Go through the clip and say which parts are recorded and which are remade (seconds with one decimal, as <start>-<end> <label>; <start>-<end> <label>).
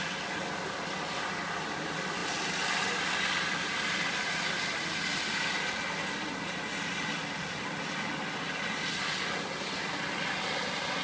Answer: 0.0-11.0 recorded